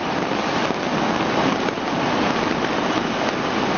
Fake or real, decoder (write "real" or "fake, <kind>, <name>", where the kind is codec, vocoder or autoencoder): real